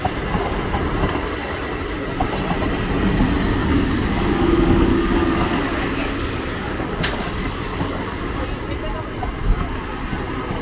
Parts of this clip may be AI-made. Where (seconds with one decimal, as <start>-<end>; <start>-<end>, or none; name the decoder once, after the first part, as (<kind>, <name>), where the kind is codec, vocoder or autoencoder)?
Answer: 3.6-8.0 (codec, DAC)